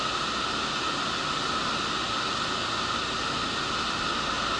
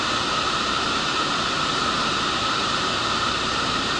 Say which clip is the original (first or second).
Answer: first